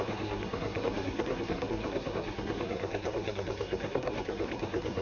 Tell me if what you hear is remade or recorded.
remade